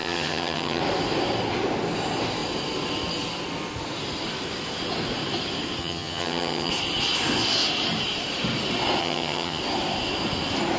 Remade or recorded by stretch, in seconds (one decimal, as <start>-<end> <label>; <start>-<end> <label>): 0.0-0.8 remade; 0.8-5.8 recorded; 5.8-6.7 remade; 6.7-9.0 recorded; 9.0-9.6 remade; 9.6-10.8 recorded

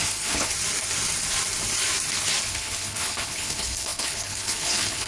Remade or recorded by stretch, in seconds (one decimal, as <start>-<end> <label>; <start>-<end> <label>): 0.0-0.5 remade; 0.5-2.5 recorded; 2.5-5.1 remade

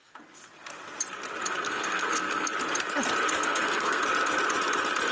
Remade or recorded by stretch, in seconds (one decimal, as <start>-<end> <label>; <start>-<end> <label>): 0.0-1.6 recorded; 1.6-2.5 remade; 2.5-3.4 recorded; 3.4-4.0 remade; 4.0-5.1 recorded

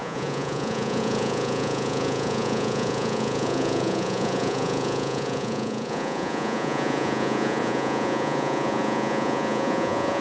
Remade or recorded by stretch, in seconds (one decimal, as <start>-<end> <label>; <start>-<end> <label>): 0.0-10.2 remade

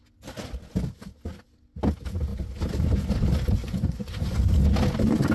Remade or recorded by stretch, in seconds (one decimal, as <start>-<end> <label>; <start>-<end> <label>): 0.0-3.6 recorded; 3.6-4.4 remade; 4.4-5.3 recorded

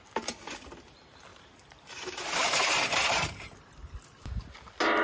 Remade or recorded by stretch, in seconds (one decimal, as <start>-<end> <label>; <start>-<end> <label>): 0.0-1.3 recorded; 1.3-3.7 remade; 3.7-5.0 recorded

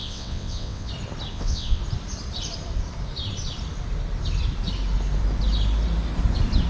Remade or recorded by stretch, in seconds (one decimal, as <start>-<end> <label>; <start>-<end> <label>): 0.0-0.9 remade; 0.9-1.3 recorded; 1.3-1.8 remade; 1.8-6.7 recorded

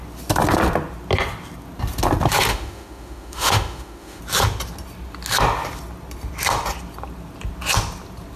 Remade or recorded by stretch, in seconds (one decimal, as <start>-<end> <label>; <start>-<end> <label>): 0.0-2.5 recorded; 2.5-4.2 remade; 4.2-8.4 recorded